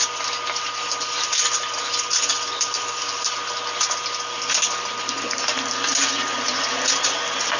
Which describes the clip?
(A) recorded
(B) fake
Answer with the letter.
A